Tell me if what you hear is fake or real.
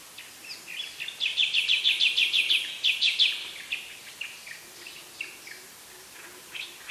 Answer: real